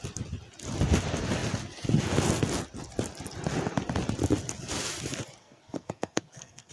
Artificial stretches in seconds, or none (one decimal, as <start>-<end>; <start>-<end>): 5.4-6.7